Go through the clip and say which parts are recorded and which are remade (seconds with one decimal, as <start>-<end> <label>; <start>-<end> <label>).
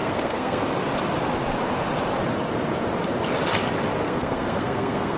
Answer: 0.0-0.6 remade; 0.6-4.0 recorded; 4.0-5.2 remade